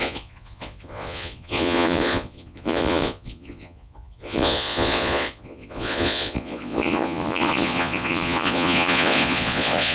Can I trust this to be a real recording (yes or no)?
no